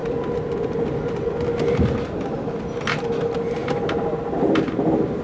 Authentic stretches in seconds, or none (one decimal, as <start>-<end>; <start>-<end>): 0.0-5.2